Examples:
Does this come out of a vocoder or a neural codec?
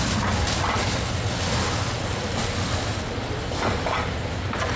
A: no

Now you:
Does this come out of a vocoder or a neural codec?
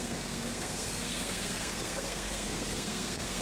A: yes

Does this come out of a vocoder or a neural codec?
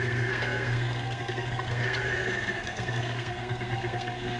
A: yes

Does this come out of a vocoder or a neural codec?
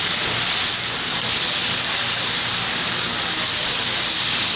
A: no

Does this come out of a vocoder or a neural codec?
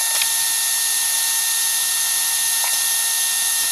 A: no